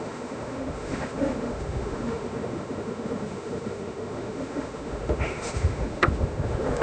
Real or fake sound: fake